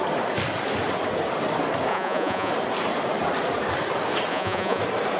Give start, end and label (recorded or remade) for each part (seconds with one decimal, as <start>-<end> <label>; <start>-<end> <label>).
0.0-1.9 recorded; 1.9-2.5 remade; 2.5-4.3 recorded; 4.3-4.8 remade; 4.8-5.2 recorded